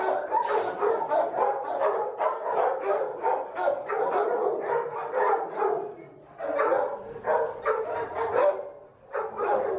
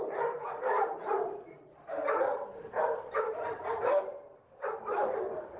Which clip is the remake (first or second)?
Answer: second